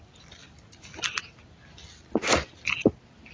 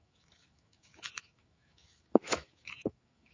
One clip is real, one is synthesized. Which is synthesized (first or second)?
second